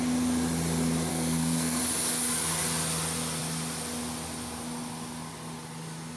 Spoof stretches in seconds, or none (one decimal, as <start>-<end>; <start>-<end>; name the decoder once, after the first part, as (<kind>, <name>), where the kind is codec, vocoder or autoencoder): 1.1-1.8 (codec, SNAC)